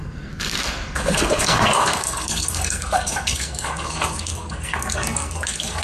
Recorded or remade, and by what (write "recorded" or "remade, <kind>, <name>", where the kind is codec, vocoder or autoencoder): remade, codec, SNAC